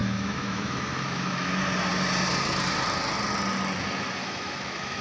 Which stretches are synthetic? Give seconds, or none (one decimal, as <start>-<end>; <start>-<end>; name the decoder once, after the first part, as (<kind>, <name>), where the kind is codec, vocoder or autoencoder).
0.0-1.5 (autoencoder, DAC-VAE); 4.2-5.0